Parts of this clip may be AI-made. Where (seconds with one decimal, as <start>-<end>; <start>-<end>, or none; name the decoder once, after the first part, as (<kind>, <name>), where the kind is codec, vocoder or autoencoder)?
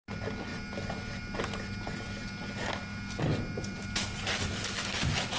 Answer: none